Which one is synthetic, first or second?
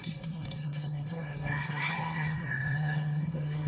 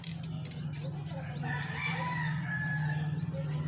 first